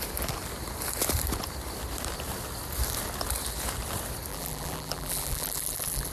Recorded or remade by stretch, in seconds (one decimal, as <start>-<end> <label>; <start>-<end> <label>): 0.0-4.3 recorded; 4.3-6.1 remade